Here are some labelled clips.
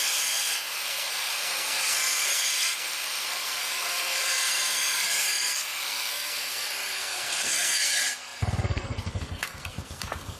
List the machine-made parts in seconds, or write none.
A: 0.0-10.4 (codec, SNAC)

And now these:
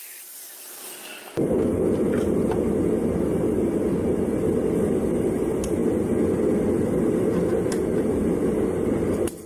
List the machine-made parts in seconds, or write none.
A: none

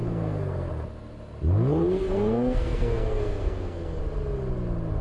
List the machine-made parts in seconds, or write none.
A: 0.0-0.7 (codec, SNAC); 1.8-4.0

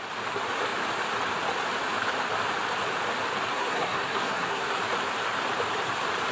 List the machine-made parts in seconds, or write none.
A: 3.5-4.8 (codec, SNAC)

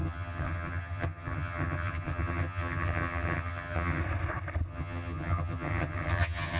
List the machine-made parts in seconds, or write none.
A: 0.0-4.0 (vocoder, HiFi-GAN); 4.7-6.6

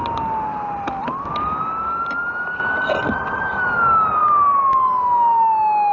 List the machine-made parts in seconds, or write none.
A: none

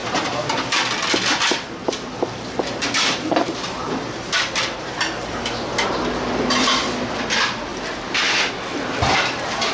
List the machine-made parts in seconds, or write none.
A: 0.0-0.8 (vocoder, BigVGAN v2); 1.8-4.9